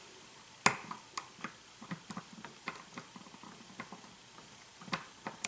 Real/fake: real